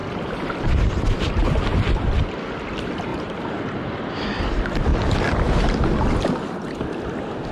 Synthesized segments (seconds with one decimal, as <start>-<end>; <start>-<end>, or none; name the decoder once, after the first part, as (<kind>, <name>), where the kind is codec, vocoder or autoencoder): 3.1-4.0 (vocoder, BigVGAN v2)